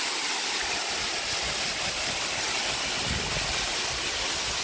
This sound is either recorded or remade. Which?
recorded